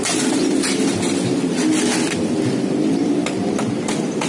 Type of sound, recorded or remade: recorded